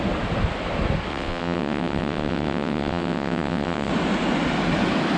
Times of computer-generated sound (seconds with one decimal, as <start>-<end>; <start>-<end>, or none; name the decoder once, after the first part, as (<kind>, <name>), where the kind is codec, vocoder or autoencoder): 1.1-3.9 (vocoder, WaveNeXt)